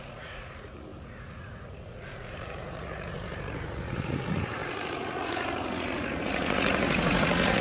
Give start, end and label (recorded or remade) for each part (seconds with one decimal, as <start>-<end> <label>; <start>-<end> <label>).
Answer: 0.0-7.6 remade